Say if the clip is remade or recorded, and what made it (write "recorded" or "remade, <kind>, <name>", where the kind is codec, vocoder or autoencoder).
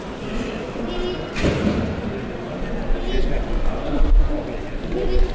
recorded